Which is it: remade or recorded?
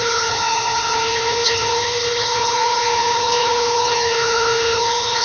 remade